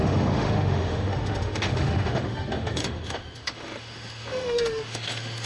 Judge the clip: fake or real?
fake